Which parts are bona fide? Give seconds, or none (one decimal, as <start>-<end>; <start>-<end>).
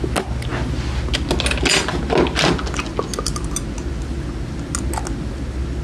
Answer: 0.0-5.8